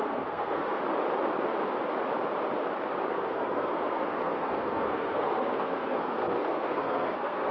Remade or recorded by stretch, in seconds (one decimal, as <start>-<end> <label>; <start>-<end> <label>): 0.0-0.8 remade; 0.8-3.1 recorded; 3.1-7.5 remade